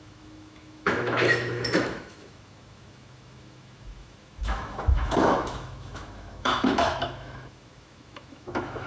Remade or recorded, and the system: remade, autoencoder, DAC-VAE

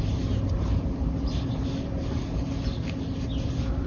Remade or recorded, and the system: recorded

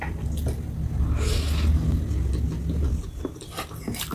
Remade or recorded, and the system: recorded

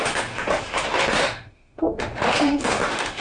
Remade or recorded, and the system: remade, autoencoder, DAC-VAE